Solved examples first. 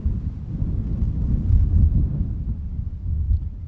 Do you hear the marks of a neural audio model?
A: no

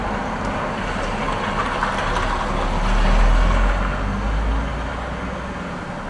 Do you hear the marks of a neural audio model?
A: no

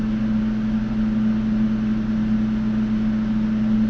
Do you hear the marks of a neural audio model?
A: no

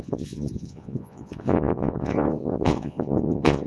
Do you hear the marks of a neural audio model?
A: yes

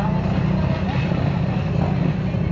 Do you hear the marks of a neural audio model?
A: no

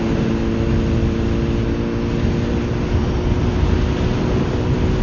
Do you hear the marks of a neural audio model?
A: no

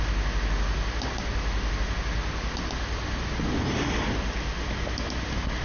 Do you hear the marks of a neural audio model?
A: no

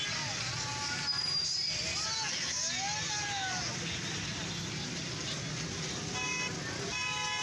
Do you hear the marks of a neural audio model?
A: no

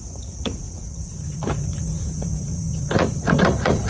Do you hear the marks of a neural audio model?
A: yes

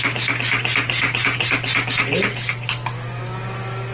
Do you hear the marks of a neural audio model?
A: no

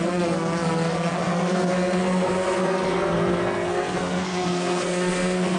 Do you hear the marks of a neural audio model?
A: yes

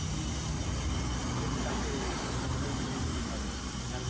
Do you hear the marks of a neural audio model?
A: no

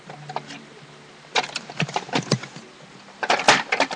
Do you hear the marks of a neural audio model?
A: no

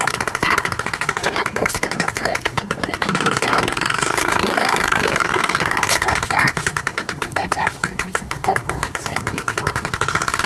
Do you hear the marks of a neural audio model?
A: yes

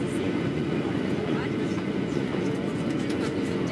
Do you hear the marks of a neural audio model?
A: yes